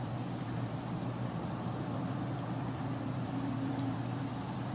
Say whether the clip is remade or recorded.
remade